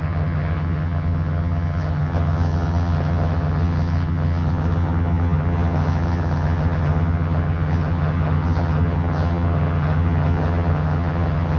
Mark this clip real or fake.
fake